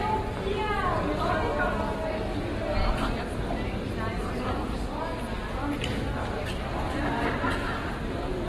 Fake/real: real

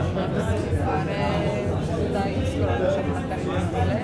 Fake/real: real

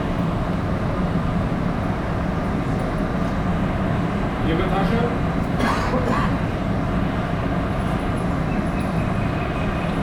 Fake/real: real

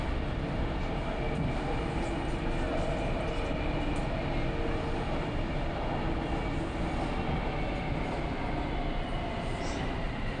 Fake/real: real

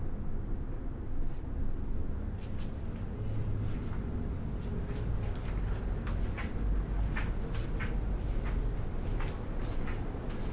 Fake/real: real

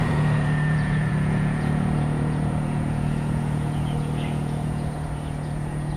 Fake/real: fake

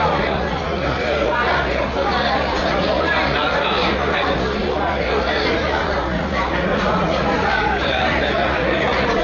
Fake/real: fake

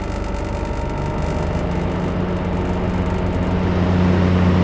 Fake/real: real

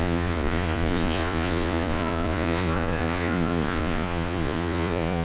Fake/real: fake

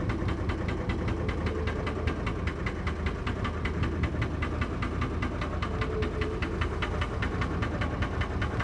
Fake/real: real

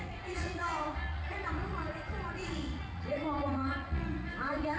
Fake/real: fake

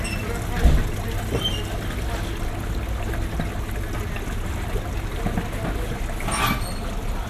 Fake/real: real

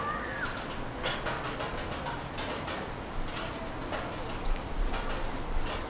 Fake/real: real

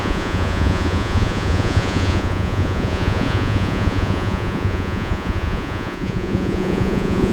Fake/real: fake